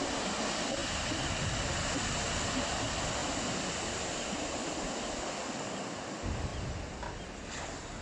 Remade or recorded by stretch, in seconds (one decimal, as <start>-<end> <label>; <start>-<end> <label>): 0.0-8.0 recorded